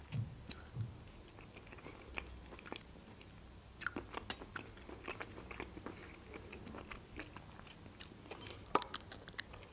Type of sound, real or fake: real